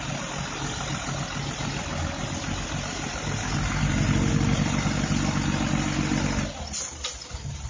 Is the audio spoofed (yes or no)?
no